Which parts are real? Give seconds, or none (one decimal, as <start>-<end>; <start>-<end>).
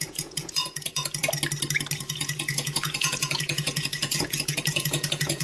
1.2-2.0